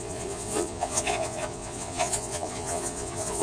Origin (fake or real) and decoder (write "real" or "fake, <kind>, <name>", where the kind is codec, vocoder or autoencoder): fake, vocoder, Vocos